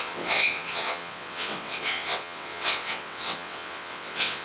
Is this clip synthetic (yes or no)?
yes